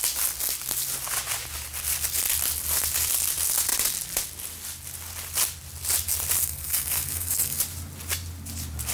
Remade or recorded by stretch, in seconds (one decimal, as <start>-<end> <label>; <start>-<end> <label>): 0.0-6.4 recorded; 6.4-7.6 remade; 7.6-8.9 recorded